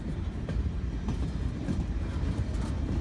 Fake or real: real